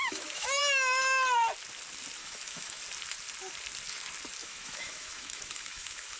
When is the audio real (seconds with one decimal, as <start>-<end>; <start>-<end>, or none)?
0.6-2.2; 2.8-4.4